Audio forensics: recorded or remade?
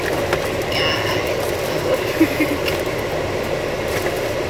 recorded